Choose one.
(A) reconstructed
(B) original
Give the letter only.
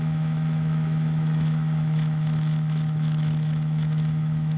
A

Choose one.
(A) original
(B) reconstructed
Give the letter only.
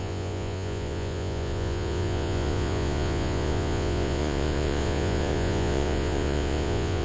B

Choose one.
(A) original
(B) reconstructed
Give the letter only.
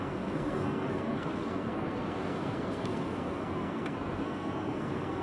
B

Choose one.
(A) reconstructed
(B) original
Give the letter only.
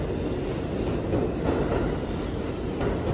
B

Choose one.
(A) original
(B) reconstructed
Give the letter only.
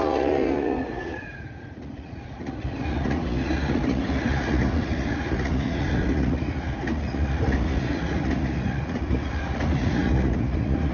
B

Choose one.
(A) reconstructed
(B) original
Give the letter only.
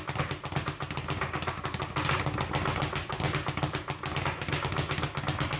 B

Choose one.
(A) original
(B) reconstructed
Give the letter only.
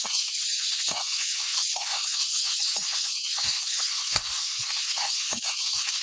B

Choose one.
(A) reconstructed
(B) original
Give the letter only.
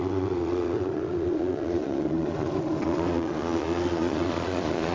A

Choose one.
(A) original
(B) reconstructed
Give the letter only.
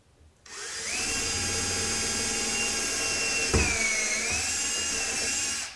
A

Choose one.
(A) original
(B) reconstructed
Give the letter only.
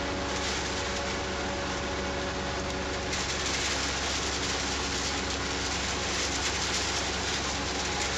A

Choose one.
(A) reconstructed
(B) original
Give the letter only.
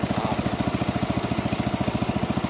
B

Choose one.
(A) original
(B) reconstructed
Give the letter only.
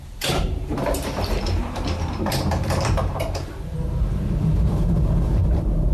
B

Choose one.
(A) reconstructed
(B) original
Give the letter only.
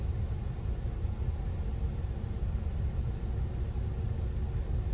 B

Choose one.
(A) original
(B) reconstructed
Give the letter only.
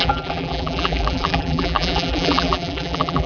B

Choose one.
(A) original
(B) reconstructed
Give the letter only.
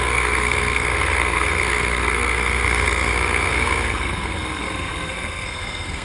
B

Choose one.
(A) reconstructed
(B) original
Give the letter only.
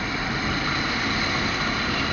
B